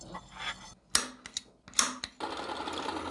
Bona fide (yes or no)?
yes